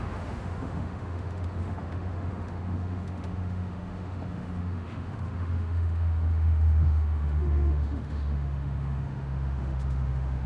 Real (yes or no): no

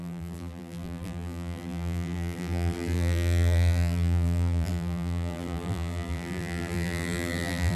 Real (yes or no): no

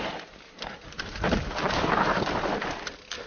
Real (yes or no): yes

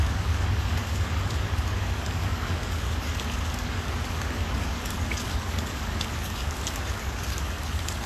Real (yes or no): no